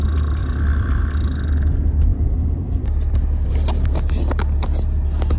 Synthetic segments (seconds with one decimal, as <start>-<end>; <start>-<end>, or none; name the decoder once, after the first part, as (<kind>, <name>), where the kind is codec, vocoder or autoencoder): 0.4-1.0 (vocoder, BigVGAN v2); 2.1-3.5